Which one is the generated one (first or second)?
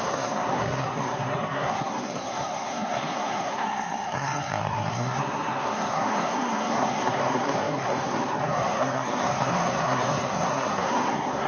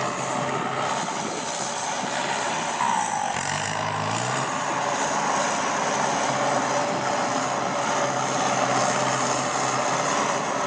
first